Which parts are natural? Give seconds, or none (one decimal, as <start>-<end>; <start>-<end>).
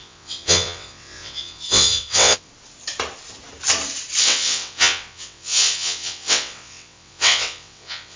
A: 2.5-4.2